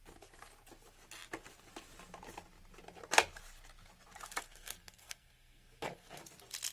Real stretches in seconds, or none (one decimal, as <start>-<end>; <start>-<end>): 0.0-4.4; 6.2-6.7